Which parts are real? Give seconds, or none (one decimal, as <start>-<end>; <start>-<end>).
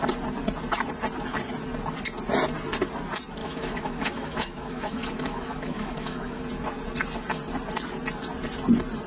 0.0-3.4; 6.4-9.1